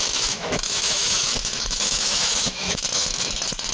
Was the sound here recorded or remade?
remade